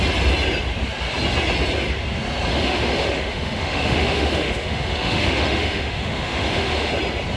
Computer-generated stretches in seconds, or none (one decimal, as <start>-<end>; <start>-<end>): 2.5-6.9